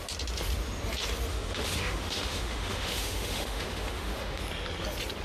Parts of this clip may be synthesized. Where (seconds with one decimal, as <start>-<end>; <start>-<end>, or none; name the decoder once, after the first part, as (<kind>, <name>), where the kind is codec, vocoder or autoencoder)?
1.3-4.4 (autoencoder, DAC-VAE)